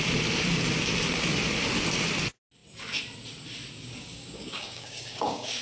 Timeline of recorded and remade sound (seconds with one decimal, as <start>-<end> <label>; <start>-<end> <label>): 0.0-4.0 recorded; 4.0-5.6 remade